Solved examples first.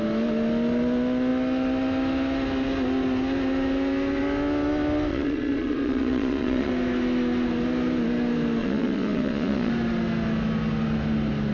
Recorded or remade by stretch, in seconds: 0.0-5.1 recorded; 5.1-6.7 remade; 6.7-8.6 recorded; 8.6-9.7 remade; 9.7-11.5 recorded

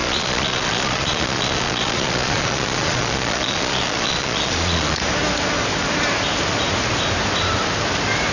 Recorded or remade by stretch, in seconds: 0.0-5.0 remade; 5.0-8.3 recorded